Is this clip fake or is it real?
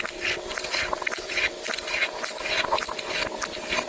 real